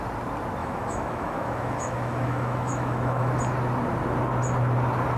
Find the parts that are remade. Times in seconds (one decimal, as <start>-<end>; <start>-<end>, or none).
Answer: 0.6-3.3